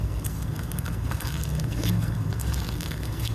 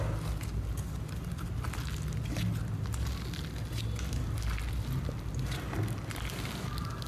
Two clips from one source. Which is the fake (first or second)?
first